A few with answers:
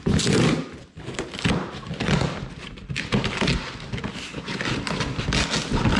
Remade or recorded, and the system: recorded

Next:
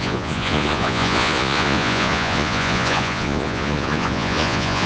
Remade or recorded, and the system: remade, vocoder, Vocos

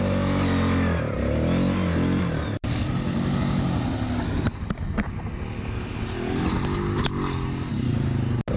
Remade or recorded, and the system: recorded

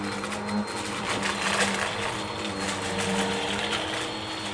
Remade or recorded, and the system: recorded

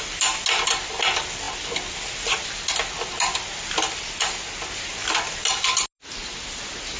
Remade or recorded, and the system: recorded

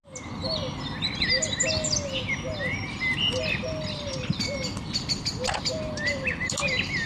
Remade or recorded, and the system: recorded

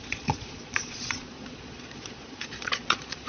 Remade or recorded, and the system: remade, vocoder, Vocos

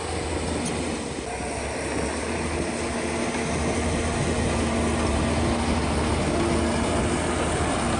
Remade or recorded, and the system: recorded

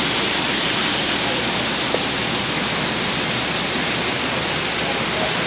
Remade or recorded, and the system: recorded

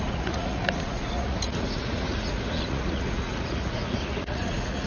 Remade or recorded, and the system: remade, vocoder, Vocos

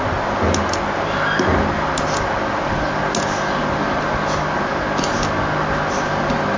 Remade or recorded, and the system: recorded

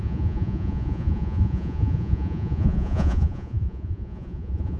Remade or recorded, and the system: remade, vocoder, Vocos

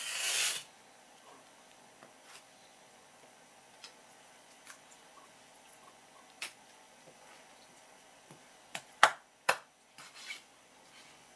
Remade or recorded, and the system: remade, vocoder, Vocos